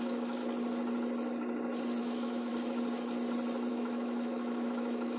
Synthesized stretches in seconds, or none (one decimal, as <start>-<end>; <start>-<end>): 0.0-0.4; 2.0-2.5; 3.7-5.2